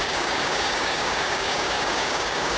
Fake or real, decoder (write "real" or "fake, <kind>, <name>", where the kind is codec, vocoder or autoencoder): fake, codec, DAC